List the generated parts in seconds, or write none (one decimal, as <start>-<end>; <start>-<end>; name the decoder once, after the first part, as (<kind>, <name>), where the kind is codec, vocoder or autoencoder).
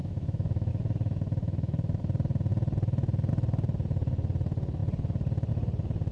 0.0-0.7 (autoencoder, DAC-VAE); 1.4-2.0